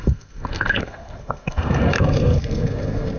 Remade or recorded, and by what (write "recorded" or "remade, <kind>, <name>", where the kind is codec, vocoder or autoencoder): remade, codec, SNAC